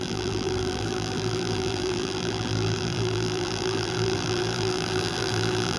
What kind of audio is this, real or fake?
fake